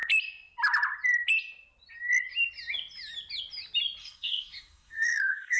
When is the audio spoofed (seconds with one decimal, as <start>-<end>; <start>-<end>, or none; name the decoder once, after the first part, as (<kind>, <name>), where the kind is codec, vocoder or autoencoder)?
4.0-5.6 (codec, DAC)